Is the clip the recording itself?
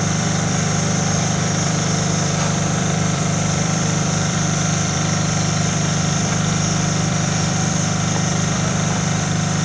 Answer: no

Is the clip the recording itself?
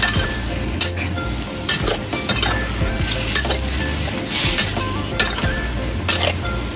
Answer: yes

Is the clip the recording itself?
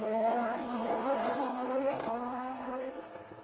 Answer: no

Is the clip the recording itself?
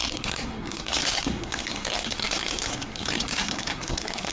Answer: no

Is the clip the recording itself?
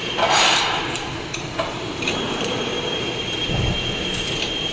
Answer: no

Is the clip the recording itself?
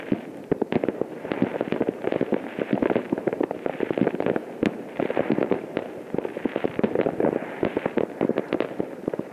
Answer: no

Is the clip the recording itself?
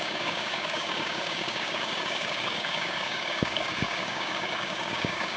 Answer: no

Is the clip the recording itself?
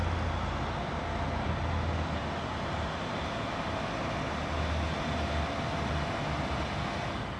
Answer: yes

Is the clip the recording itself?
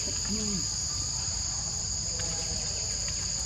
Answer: yes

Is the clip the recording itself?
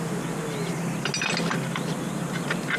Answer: yes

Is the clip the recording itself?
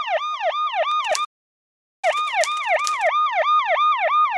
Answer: yes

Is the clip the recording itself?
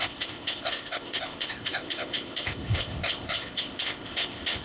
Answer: no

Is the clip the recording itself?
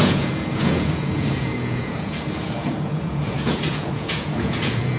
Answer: no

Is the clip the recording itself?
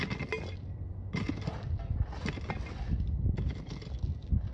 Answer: yes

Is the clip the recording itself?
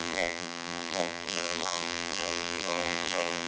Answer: no